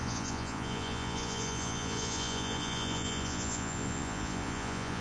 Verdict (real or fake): fake